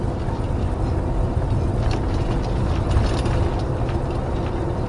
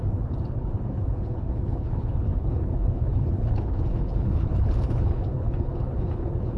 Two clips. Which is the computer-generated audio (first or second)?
second